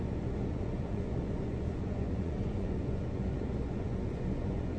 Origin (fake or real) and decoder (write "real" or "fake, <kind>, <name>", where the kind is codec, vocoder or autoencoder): fake, vocoder, Vocos